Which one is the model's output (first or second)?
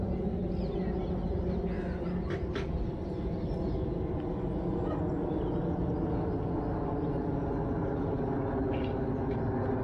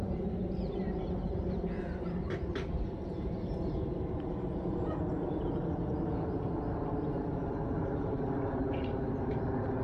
second